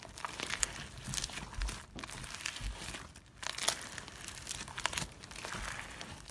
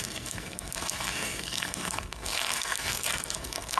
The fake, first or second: second